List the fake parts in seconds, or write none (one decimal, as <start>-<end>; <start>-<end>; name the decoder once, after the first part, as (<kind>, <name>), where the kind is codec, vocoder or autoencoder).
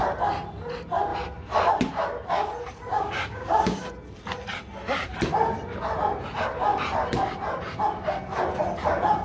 2.9-3.9 (codec, DAC)